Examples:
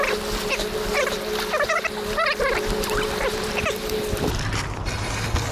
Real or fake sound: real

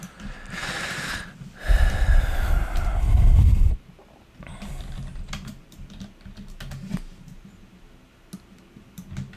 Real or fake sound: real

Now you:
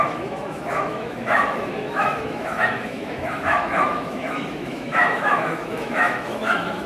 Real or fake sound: fake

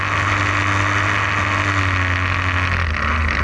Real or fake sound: real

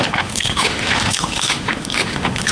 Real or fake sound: fake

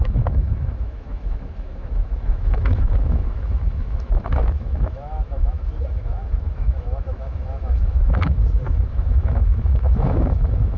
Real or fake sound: fake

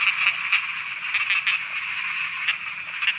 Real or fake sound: real